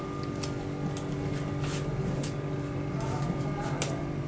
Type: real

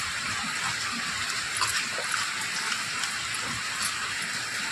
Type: real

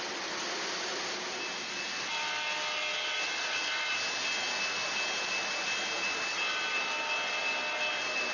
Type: real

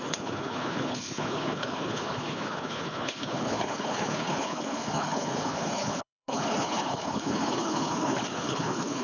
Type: fake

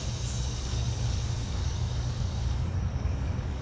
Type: fake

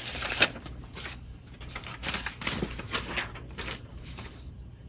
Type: fake